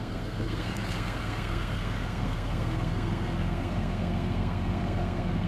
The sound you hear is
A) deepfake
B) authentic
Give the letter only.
A